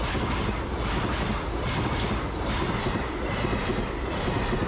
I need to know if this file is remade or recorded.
recorded